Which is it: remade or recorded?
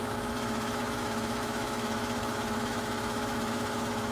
remade